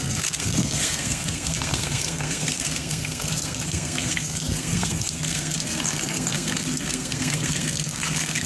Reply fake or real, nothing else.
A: fake